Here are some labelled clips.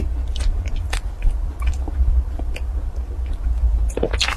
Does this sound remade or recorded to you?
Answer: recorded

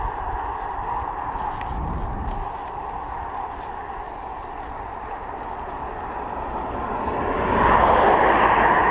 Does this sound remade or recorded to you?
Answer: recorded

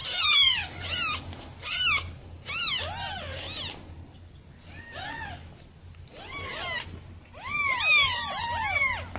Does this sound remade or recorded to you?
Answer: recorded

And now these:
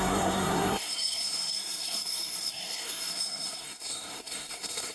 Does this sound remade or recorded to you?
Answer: remade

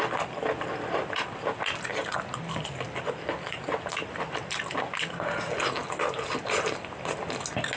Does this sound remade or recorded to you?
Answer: recorded